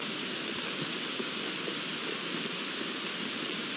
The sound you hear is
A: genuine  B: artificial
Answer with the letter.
A